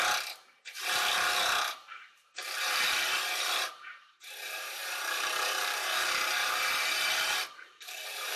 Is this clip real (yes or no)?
no